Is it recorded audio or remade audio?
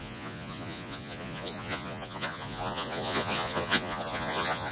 remade